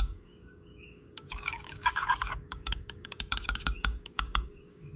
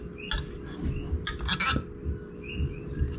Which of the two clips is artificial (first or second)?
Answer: first